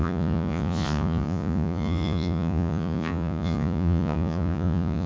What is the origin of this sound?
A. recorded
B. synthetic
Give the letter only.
B